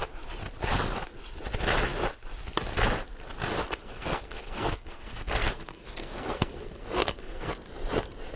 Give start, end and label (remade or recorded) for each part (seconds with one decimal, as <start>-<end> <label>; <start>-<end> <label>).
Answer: 0.0-3.8 recorded; 3.8-7.5 remade; 7.5-8.4 recorded